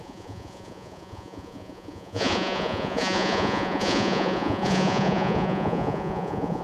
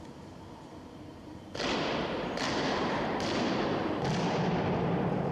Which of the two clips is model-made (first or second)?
first